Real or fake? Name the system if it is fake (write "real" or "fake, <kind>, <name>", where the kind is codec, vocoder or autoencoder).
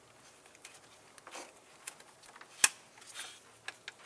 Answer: real